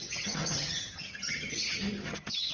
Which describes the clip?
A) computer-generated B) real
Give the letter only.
A